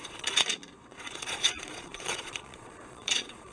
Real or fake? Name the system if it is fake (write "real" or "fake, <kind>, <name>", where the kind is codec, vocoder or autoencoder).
fake, vocoder, Vocos